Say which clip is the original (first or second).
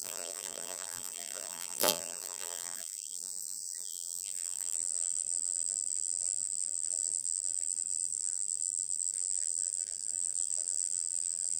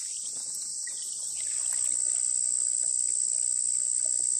second